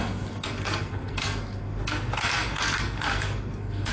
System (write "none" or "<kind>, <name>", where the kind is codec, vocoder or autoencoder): codec, SNAC